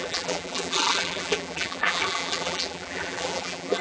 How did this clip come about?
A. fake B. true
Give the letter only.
A